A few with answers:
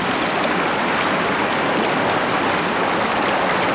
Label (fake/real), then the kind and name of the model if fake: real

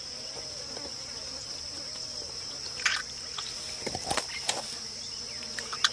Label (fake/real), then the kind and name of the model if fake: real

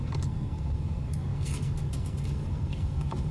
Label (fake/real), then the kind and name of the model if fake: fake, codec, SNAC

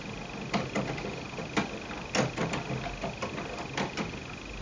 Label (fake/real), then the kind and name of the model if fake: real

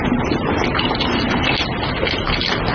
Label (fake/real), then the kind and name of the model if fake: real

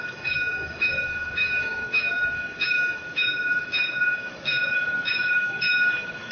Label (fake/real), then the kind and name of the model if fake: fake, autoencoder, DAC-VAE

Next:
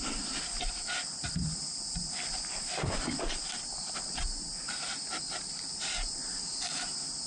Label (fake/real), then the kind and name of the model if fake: real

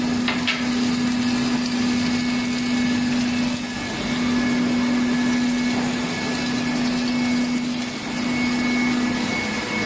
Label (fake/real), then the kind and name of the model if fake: real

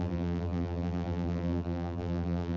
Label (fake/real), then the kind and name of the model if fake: fake, vocoder, BigVGAN v2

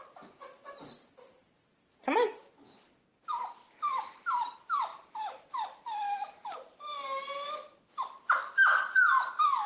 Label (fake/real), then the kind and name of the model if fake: real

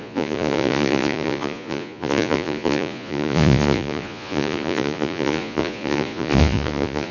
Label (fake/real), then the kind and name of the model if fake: fake, vocoder, Vocos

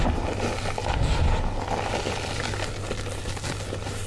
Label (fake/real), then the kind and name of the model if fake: real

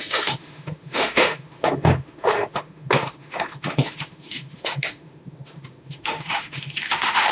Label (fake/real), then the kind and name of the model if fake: fake, autoencoder, DAC-VAE